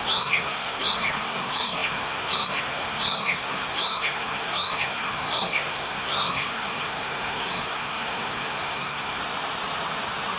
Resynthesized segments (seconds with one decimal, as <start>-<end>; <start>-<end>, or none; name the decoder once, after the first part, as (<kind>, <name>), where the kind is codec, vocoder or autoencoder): 0.0-9.2 (codec, SNAC)